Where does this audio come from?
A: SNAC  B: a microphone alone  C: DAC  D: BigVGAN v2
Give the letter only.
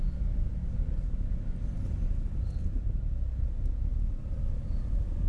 B